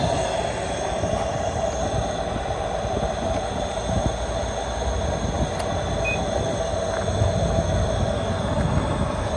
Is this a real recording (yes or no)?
yes